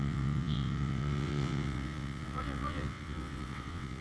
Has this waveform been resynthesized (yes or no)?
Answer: yes